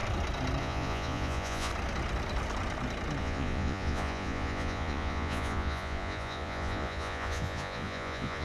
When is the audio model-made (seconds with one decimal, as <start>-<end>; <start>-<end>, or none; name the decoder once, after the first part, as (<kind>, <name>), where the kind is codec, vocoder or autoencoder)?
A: 0.6-1.7 (vocoder, Vocos); 3.2-8.4